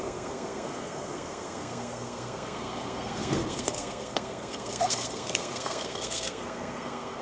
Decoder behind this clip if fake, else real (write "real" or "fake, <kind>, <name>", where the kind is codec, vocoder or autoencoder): fake, codec, SNAC